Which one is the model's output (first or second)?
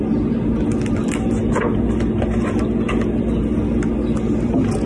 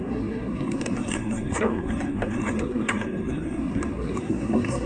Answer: second